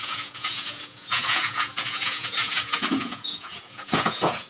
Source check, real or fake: fake